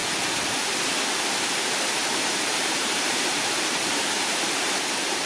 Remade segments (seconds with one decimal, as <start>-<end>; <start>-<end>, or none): 1.5-5.3